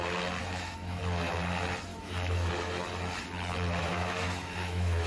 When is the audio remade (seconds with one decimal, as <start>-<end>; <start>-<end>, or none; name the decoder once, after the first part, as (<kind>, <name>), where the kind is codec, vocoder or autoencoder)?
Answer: 0.4-1.0 (autoencoder, DAC-VAE); 1.9-2.5; 3.8-5.1